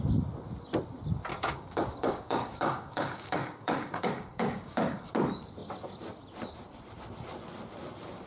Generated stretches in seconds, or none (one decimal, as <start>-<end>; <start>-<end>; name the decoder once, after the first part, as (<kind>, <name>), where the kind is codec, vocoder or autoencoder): 1.3-5.1 (codec, DAC)